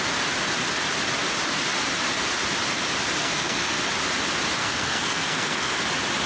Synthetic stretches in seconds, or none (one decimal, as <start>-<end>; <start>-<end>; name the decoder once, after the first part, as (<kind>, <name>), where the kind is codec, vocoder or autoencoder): 3.2-3.8 (codec, SNAC); 4.6-5.8